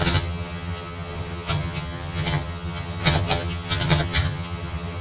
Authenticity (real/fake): fake